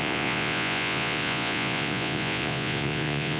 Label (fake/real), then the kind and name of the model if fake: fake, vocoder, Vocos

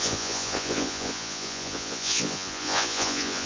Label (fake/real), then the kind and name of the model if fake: fake, vocoder, Vocos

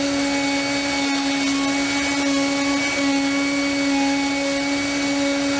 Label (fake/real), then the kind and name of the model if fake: real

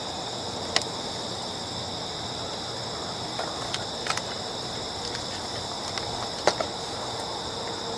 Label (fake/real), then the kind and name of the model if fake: real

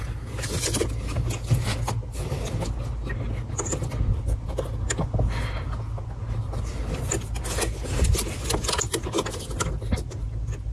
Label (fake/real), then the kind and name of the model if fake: real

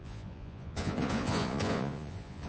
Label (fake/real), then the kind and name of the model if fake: fake, vocoder, Vocos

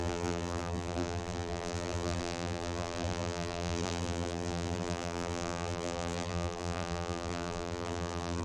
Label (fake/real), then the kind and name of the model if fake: fake, vocoder, BigVGAN v2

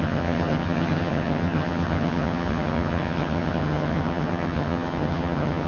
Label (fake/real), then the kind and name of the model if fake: fake, vocoder, HiFi-GAN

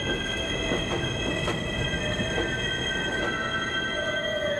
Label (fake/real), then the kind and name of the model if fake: real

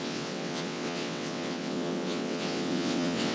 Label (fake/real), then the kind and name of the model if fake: fake, vocoder, WaveNeXt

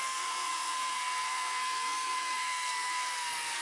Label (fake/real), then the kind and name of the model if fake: fake, codec, SNAC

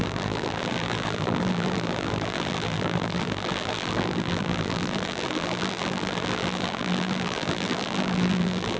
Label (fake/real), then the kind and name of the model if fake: fake, vocoder, BigVGAN v2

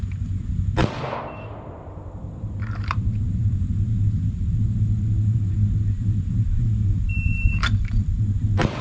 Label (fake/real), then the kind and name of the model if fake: fake, vocoder, BigVGAN v2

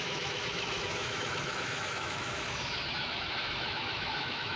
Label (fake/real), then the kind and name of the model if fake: fake, autoencoder, DAC-VAE